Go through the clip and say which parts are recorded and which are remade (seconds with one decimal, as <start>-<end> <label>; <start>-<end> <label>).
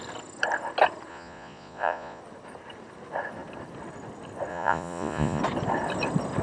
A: 0.0-1.1 recorded; 1.1-2.2 remade; 2.2-4.5 recorded; 4.5-5.4 remade; 5.4-6.4 recorded